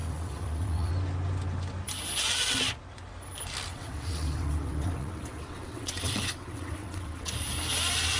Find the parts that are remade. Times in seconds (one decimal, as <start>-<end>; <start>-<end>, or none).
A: 0.0-0.9; 3.7-7.3